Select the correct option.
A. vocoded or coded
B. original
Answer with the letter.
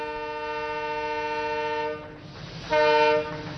B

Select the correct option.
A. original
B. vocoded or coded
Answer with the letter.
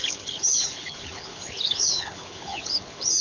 B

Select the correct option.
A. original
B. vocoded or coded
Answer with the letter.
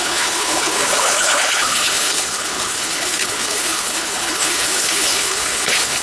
B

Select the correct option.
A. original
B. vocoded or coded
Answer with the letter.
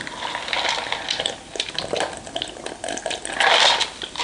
A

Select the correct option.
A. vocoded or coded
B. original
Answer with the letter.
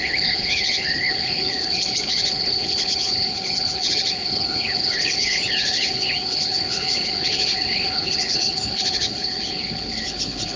A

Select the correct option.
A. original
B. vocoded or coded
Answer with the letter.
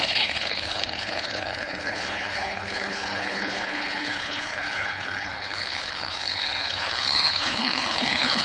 B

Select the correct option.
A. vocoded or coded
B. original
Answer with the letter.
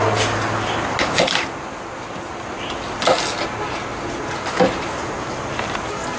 B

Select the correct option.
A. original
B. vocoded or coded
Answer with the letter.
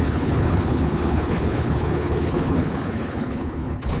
B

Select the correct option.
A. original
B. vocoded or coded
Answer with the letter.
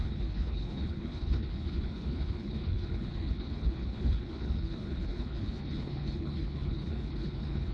B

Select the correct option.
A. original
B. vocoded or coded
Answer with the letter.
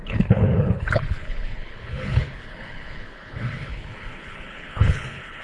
B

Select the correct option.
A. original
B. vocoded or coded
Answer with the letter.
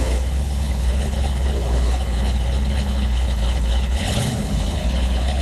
B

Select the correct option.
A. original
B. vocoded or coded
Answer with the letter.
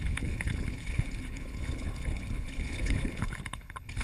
B